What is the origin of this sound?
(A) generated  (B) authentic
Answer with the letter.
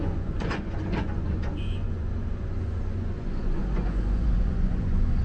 A